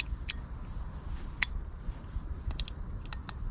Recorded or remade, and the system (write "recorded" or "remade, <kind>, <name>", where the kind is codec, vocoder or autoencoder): recorded